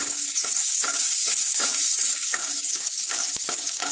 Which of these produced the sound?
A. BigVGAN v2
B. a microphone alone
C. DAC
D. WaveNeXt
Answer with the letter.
C